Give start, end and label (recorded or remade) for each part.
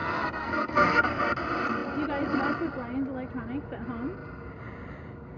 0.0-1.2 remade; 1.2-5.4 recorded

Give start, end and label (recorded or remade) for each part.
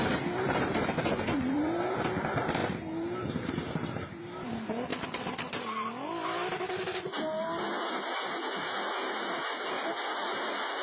0.0-2.6 remade; 2.6-3.5 recorded; 3.5-4.9 remade; 4.9-9.3 recorded; 9.3-10.8 remade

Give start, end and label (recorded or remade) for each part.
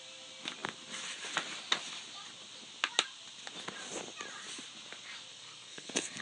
0.0-5.3 recorded; 5.3-6.2 remade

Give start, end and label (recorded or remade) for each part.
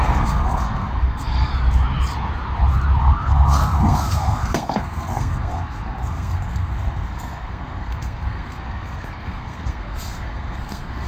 0.0-1.5 remade; 1.5-3.0 recorded; 3.0-11.1 remade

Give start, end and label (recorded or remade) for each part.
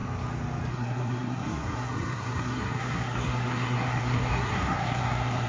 0.0-0.7 recorded; 0.7-5.5 remade